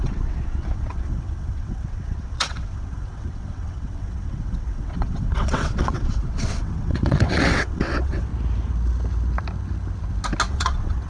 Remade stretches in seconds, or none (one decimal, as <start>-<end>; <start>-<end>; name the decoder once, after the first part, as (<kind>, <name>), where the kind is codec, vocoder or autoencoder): 0.0-8.3 (vocoder, WaveNeXt); 10.5-11.1